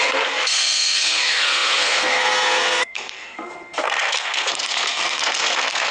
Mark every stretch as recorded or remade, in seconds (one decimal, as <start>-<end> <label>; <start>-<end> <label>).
0.0-5.9 remade